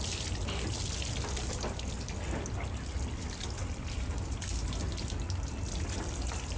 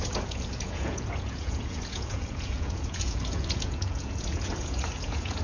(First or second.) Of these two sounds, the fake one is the second